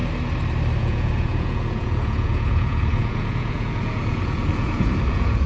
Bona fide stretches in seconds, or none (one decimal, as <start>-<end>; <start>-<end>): 0.0-0.8